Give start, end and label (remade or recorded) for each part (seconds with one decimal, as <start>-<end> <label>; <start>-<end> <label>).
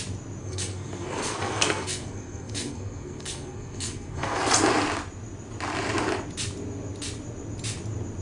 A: 0.0-0.4 recorded; 0.4-4.4 remade; 4.4-8.2 recorded